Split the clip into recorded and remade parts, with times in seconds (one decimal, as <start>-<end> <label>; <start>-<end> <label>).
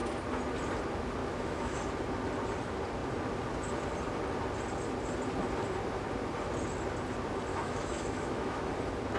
0.0-1.2 recorded; 1.2-1.8 remade; 1.8-7.5 recorded; 7.5-8.7 remade; 8.7-9.2 recorded